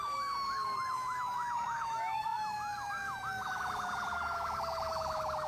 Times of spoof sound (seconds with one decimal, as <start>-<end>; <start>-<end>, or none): 0.0-5.5